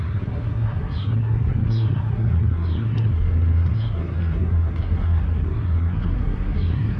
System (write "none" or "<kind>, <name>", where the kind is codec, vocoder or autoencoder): codec, SNAC